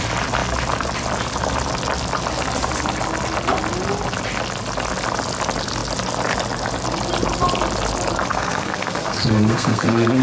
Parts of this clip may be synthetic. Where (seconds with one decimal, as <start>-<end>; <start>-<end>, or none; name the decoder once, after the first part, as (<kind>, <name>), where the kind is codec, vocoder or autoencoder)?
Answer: 8.3-10.2 (codec, SNAC)